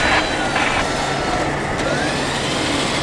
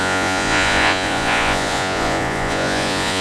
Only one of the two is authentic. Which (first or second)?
first